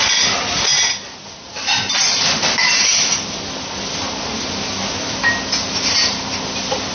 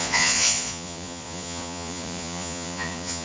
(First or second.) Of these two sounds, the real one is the first